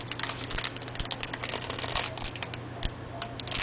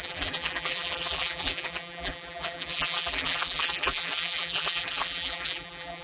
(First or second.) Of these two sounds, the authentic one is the first